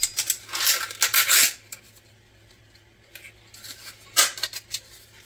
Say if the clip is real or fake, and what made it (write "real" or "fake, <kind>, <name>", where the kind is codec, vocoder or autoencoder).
real